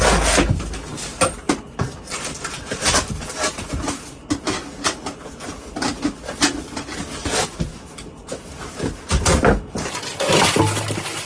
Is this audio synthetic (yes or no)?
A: no